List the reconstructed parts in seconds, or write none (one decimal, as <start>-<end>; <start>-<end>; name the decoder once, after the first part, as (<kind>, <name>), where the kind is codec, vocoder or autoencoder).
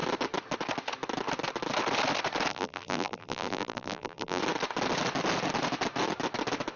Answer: 2.5-4.4 (vocoder, BigVGAN v2)